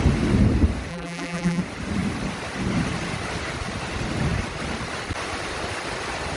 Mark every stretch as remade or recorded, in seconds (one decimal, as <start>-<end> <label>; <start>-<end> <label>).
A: 0.0-0.9 recorded; 0.9-1.6 remade; 1.6-6.4 recorded